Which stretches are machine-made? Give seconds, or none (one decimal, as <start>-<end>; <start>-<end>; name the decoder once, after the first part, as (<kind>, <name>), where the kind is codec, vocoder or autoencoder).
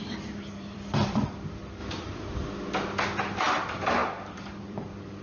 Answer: 0.0-1.8 (vocoder, BigVGAN v2); 3.4-4.0; 4.6-5.2